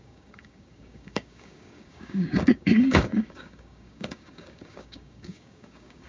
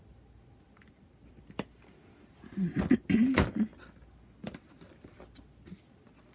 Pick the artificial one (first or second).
first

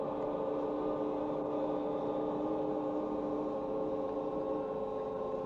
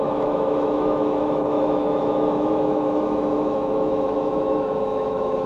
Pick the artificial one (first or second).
second